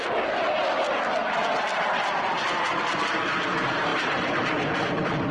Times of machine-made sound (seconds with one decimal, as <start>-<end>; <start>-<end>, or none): 1.2-2.0; 3.9-5.3